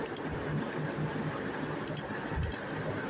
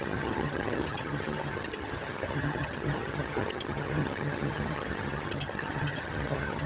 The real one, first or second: first